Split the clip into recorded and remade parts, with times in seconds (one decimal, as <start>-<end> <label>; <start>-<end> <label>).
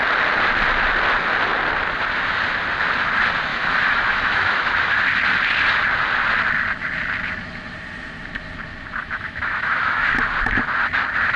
0.0-3.5 recorded; 3.5-4.9 remade; 4.9-9.0 recorded; 9.0-10.3 remade; 10.3-11.4 recorded